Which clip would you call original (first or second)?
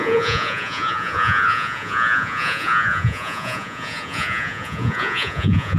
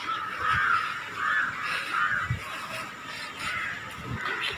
second